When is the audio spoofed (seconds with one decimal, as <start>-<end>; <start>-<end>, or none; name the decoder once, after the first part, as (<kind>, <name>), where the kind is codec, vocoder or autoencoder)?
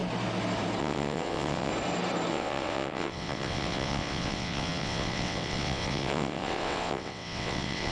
0.8-1.7 (vocoder, WaveNeXt); 2.3-7.9